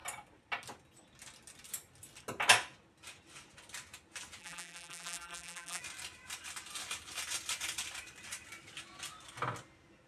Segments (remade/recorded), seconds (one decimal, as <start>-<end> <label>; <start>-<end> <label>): 0.0-4.4 recorded; 4.4-5.8 remade; 5.8-10.1 recorded